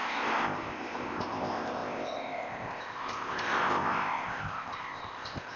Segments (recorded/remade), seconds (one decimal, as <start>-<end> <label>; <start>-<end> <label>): 0.0-5.6 remade